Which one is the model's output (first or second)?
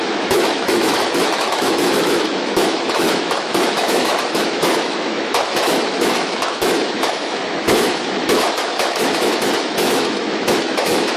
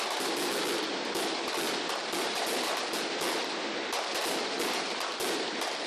first